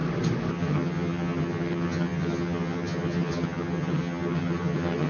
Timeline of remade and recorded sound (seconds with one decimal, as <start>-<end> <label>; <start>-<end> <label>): 0.0-0.5 recorded; 0.5-5.1 remade